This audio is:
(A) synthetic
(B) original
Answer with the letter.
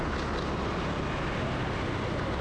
B